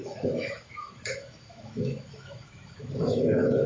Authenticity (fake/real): fake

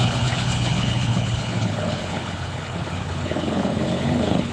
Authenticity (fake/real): fake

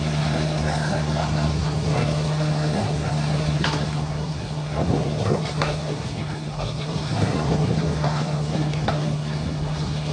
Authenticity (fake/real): fake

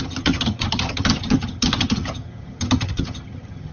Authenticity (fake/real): fake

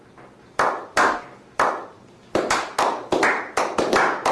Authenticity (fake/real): real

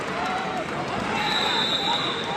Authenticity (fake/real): fake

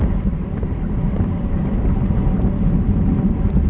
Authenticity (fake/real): real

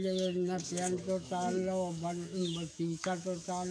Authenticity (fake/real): fake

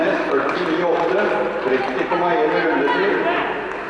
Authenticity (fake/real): real